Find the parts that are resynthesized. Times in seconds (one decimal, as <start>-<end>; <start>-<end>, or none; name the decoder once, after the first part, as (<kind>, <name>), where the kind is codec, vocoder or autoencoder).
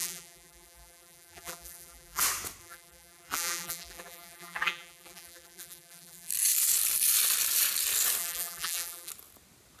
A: 0.0-2.2 (vocoder, BigVGAN v2); 2.6-6.3; 8.2-9.1